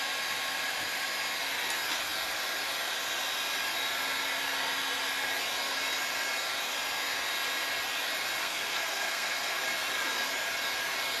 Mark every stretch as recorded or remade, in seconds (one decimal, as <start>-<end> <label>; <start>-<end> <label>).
0.0-8.4 recorded; 8.4-9.6 remade; 9.6-11.2 recorded